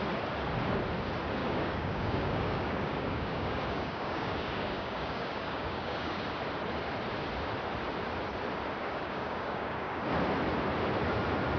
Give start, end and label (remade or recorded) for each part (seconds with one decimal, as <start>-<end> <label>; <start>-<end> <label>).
0.0-1.4 recorded; 1.4-6.2 remade; 6.2-8.8 recorded; 8.8-10.0 remade; 10.0-11.6 recorded